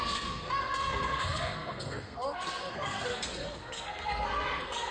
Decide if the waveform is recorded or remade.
remade